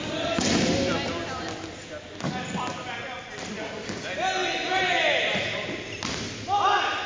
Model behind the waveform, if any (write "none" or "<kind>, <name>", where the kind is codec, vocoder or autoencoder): none